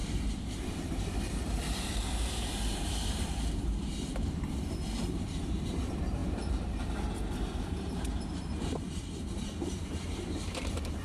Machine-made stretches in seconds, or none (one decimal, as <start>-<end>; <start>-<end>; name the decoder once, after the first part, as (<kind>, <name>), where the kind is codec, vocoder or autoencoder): 0.0-11.0 (vocoder, BigVGAN v2)